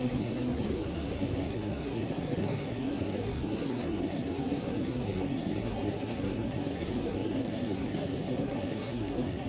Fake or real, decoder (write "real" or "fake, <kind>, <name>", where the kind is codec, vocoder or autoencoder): fake, codec, SNAC